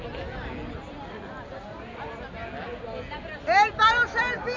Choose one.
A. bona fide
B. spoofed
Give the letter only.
A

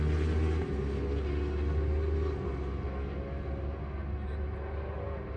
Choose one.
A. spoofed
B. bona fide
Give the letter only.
B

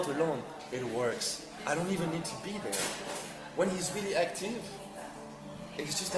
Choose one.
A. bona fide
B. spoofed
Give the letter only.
A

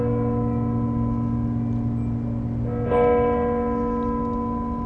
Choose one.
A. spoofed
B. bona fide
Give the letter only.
B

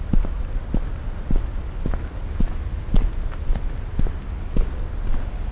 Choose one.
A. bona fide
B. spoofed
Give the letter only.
A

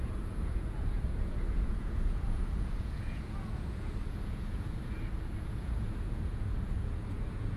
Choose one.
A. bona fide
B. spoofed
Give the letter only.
B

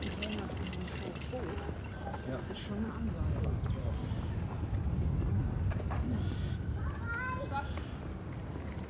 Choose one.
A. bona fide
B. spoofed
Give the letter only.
A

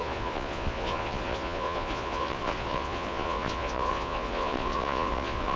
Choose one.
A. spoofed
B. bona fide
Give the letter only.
A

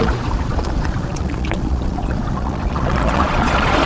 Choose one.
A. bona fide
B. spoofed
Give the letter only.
B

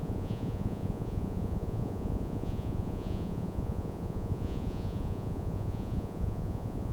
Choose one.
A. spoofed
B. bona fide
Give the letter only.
A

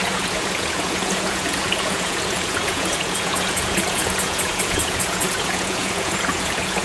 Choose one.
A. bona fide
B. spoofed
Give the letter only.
B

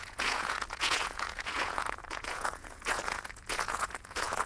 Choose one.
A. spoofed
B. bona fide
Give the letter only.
A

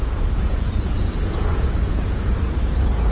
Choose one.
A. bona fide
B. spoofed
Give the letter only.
B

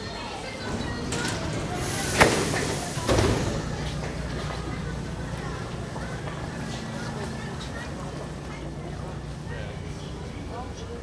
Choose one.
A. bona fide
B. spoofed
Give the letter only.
A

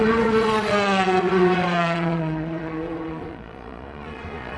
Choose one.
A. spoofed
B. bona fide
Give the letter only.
A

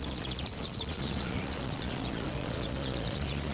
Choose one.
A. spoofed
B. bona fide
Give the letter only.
A